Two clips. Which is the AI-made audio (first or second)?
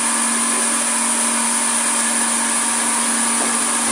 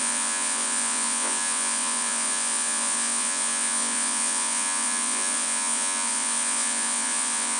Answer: second